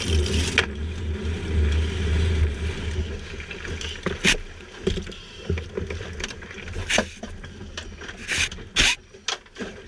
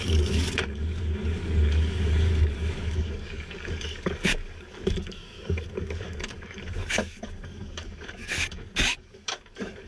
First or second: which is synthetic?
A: second